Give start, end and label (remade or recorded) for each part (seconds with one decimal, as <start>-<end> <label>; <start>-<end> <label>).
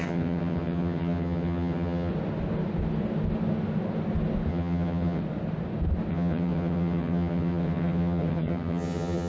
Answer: 0.0-2.1 remade; 2.1-4.5 recorded; 4.5-5.2 remade; 5.2-6.1 recorded; 6.1-9.3 remade